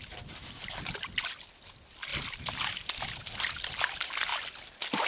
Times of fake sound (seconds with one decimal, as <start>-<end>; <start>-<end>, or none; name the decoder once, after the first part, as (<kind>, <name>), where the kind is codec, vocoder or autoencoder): none